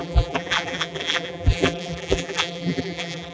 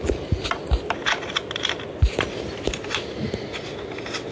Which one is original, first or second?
second